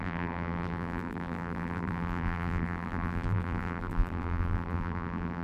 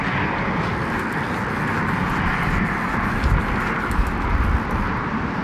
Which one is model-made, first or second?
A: first